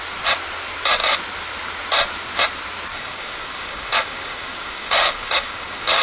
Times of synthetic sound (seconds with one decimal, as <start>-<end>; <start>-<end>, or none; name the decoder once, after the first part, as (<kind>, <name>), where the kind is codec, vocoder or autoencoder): 2.9-6.0 (codec, DAC)